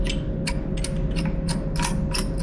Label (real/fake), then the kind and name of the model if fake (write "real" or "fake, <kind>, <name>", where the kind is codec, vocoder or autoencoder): real